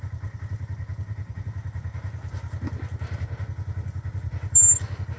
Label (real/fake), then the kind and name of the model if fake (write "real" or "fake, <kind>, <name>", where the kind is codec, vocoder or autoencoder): real